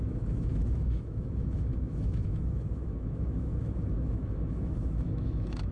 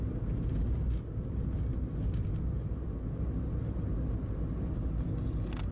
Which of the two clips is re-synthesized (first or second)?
first